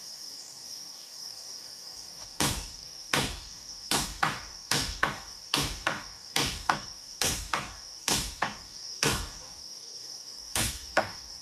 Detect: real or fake fake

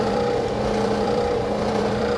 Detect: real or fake fake